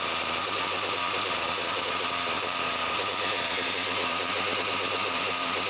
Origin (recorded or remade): remade